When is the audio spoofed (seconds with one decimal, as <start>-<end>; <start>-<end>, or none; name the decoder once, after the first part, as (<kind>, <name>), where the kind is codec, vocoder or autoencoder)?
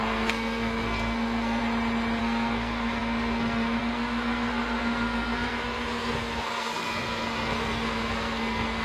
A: 0.0-1.6 (codec, SNAC); 2.2-8.8